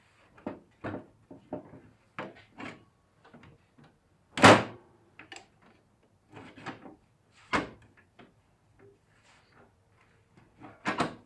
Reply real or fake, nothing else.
real